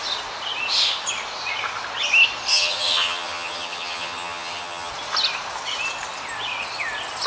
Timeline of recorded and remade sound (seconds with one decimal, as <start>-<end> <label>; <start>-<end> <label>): 0.0-2.5 recorded; 2.5-4.9 remade; 4.9-7.3 recorded